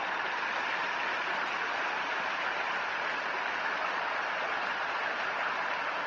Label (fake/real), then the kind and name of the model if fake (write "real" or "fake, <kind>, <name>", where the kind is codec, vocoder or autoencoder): real